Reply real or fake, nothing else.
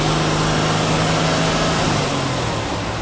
real